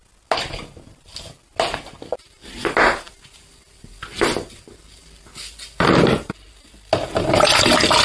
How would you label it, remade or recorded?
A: recorded